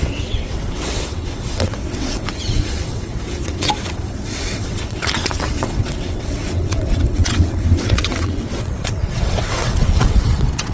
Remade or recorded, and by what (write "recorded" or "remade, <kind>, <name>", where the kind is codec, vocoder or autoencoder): remade, vocoder, WaveNeXt